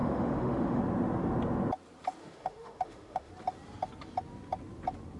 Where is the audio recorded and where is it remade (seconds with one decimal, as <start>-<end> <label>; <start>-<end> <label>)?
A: 0.0-0.8 remade; 0.8-2.2 recorded; 2.2-3.3 remade; 3.3-5.2 recorded